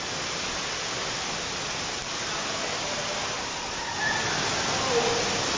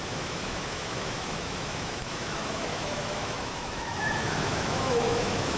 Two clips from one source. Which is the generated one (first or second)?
second